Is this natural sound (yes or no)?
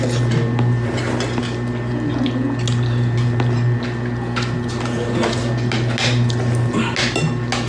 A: yes